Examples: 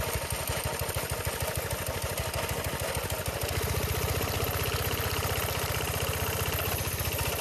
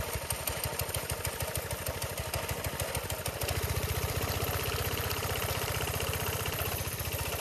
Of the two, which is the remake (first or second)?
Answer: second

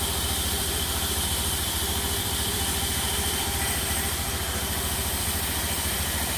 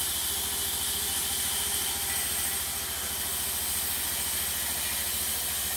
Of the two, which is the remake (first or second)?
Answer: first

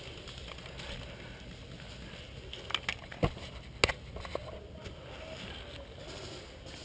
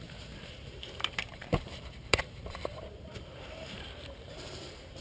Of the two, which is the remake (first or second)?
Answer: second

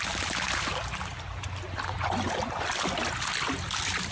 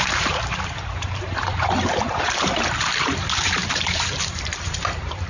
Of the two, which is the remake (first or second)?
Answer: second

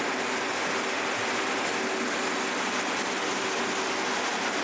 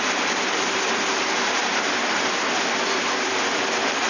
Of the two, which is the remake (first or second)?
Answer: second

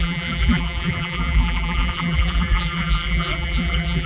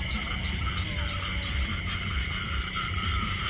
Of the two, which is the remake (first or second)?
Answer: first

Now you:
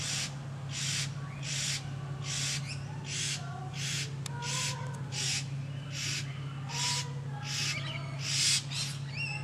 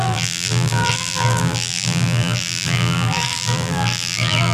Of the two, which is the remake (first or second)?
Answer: second